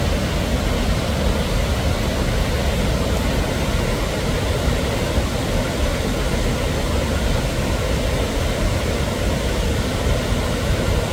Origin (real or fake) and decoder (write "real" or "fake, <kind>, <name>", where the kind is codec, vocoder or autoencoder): real